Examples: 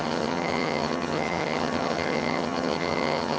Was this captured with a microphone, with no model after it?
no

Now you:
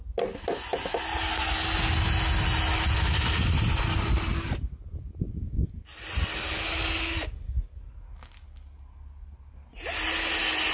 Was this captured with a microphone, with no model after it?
yes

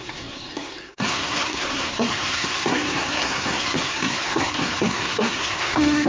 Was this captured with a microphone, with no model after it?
no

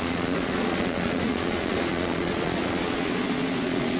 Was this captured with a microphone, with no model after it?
no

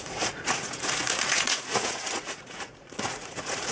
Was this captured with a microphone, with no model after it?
no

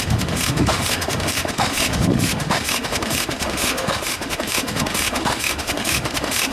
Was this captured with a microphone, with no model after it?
no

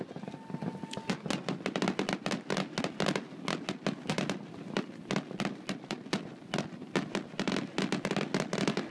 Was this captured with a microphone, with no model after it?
yes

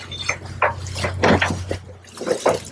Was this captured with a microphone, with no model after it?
yes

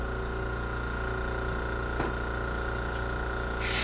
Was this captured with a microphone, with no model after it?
yes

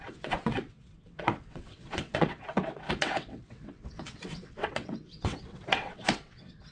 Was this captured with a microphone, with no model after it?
no